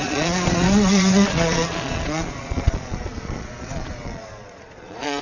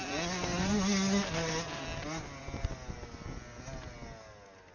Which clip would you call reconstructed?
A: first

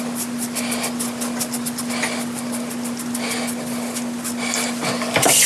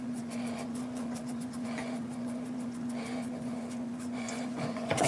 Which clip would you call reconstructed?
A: second